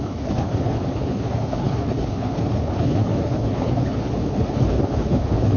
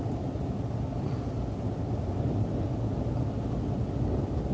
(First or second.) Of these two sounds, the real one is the second